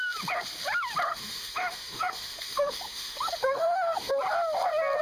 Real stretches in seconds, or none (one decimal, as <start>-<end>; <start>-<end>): 0.0-1.1; 4.1-5.0